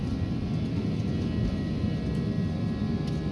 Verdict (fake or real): real